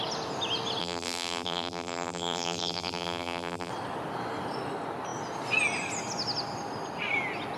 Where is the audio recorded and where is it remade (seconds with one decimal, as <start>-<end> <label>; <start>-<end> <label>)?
0.0-0.8 recorded; 0.8-3.7 remade; 3.7-7.6 recorded